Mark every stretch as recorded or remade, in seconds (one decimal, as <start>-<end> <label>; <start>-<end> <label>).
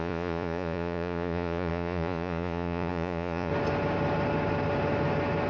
0.0-3.5 remade; 3.5-5.5 recorded